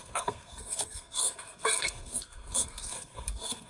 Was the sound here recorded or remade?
remade